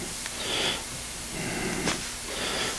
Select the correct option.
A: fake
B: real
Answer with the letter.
B